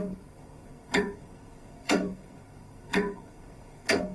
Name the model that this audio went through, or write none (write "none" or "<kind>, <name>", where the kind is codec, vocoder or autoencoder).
codec, SNAC